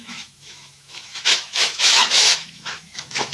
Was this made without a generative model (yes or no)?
no